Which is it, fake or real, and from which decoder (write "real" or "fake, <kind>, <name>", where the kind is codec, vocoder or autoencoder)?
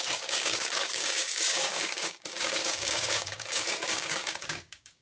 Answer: fake, codec, DAC